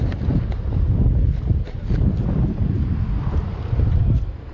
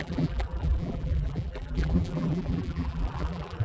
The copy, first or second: second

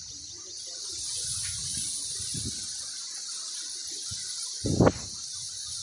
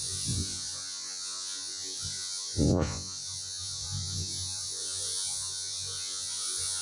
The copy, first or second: second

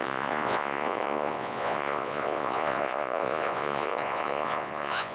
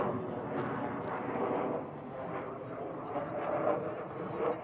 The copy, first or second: first